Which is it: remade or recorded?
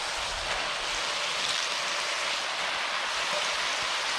recorded